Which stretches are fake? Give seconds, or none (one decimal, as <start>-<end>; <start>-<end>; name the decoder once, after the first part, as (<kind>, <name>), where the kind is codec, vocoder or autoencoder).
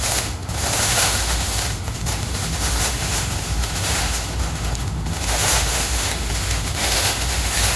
0.0-7.8 (autoencoder, DAC-VAE)